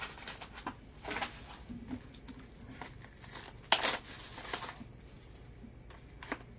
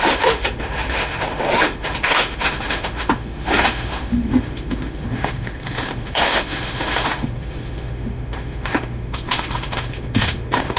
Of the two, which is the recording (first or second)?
first